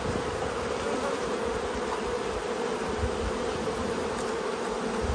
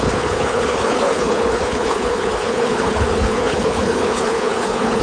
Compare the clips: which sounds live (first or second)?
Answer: first